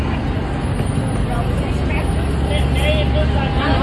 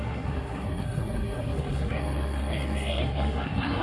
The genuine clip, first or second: first